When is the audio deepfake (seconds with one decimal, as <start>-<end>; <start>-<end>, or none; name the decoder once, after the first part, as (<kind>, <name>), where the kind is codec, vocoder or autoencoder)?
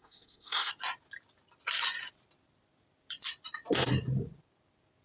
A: 0.0-0.7 (codec, SNAC)